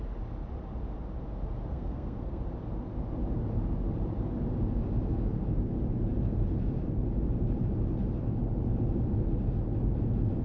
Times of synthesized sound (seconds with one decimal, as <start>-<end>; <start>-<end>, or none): 1.7-2.4